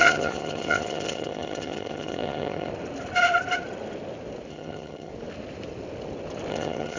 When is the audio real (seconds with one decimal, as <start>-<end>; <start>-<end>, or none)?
2.7-4.5; 5.1-6.5